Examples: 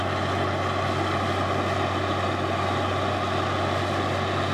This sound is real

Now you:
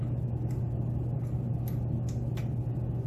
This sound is real